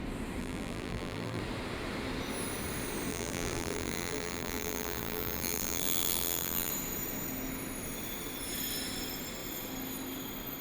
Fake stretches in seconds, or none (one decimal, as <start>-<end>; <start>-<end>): 0.4-1.4; 3.1-6.7

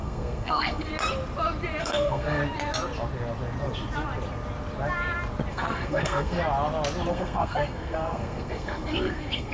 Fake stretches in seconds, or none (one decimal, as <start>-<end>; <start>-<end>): 0.0-0.9; 1.8-2.4; 5.5-6.4; 7.1-9.5

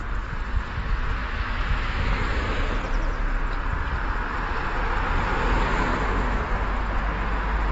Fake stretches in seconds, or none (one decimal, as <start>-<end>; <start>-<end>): 1.2-2.3; 5.9-6.4

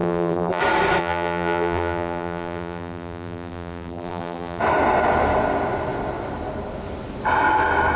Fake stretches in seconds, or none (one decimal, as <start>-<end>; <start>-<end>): 0.0-0.6; 1.0-4.6

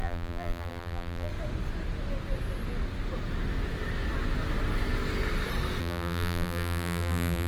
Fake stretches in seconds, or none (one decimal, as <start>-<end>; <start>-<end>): 0.0-1.3; 5.8-7.5